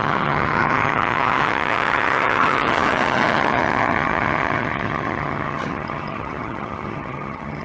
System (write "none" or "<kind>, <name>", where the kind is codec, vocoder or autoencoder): vocoder, HiFi-GAN